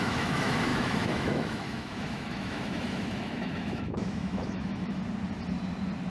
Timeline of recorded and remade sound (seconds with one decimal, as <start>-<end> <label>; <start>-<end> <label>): 0.0-5.0 remade; 5.0-6.1 recorded